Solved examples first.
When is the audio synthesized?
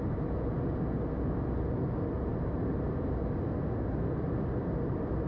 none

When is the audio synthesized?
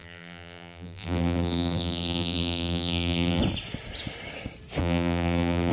0.0-3.4 (vocoder, BigVGAN v2); 4.8-5.7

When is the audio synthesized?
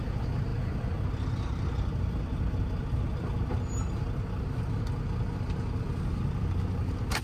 none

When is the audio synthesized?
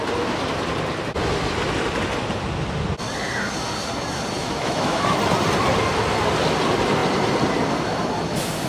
4.4-5.2 (autoencoder, DAC-VAE)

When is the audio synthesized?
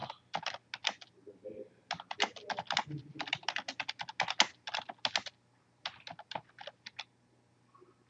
none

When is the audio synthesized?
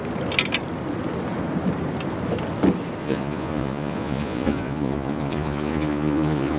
3.0-6.6 (vocoder, Vocos)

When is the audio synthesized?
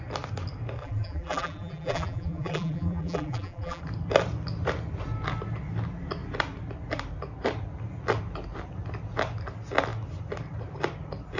0.8-3.8 (vocoder, BigVGAN v2)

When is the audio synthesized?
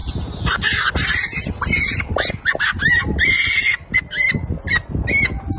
0.0-0.9 (vocoder, BigVGAN v2)